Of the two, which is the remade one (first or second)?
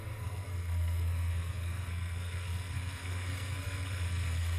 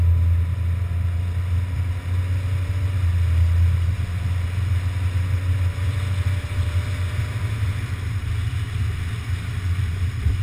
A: first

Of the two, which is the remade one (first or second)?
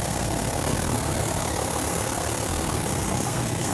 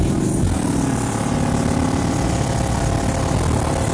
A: first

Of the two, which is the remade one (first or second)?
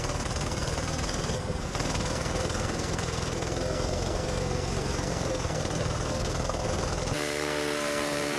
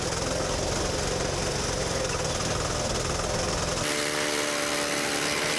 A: first